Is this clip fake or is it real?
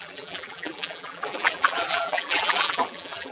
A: fake